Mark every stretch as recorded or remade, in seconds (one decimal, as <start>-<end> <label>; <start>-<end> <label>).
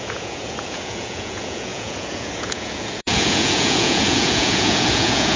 0.0-5.4 remade